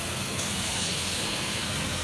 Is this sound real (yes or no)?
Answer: no